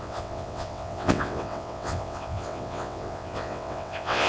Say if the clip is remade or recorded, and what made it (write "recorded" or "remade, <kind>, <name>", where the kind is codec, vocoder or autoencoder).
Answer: remade, vocoder, WaveNeXt